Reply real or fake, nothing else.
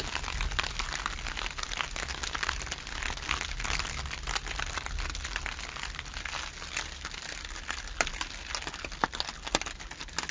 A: real